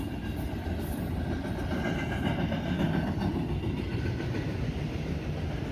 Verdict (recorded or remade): recorded